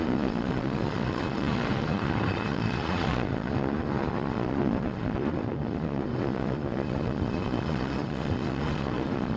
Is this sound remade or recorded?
remade